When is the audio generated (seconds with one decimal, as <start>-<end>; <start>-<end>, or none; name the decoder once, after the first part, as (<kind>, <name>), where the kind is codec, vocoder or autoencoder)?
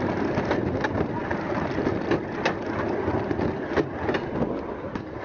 none